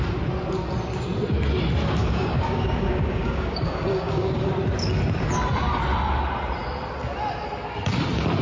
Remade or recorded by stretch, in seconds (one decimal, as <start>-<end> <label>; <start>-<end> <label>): 0.0-2.0 recorded; 2.0-4.5 remade; 4.5-8.4 recorded